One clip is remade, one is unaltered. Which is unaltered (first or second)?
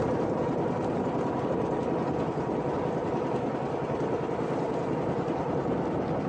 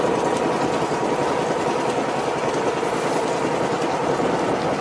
second